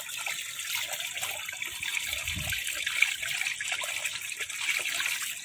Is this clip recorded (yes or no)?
yes